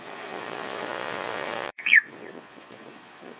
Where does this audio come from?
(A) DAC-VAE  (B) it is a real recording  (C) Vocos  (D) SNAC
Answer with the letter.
C